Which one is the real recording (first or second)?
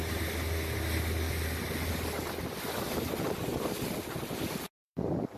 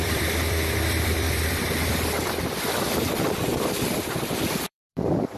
first